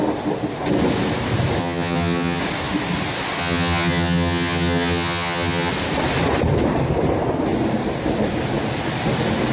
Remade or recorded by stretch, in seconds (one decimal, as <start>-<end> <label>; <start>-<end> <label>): 0.0-1.6 recorded; 1.6-2.4 remade; 2.4-3.4 recorded; 3.4-5.7 remade; 5.7-9.5 recorded